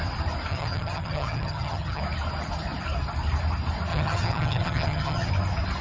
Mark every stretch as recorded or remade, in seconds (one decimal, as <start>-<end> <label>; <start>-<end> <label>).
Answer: 0.0-0.5 recorded; 0.5-2.0 remade; 2.0-3.9 recorded; 3.9-5.3 remade; 5.3-5.8 recorded